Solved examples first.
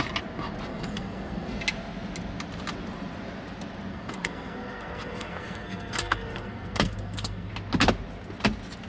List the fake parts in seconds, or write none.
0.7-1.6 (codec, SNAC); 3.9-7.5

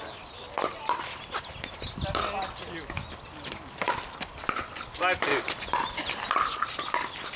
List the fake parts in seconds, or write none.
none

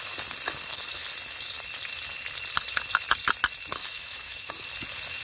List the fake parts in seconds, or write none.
3.8-4.5 (autoencoder, DAC-VAE)